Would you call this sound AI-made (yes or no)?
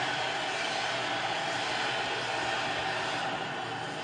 no